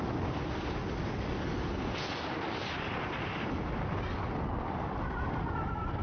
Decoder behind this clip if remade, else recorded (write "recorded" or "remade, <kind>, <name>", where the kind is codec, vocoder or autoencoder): recorded